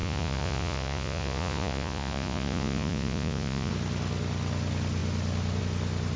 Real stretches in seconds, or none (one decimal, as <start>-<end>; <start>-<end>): 3.7-6.2